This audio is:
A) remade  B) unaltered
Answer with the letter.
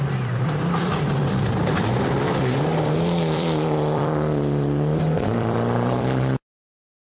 A